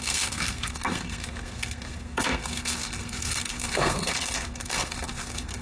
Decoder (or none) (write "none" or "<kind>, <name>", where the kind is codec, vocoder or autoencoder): codec, SNAC